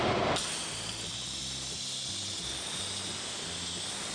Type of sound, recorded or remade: recorded